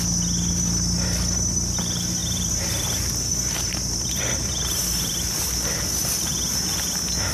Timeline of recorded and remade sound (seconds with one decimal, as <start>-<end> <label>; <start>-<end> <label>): 0.0-2.2 recorded; 2.2-5.4 remade; 5.4-7.3 recorded